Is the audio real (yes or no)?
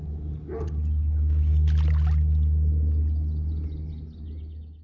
yes